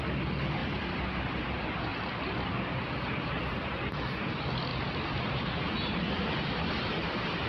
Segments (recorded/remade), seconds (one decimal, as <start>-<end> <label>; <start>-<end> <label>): 0.0-0.6 recorded; 0.6-1.1 remade; 1.1-1.9 recorded; 1.9-3.2 remade; 3.2-7.5 recorded